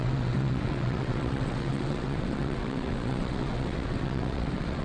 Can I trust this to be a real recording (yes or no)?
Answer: no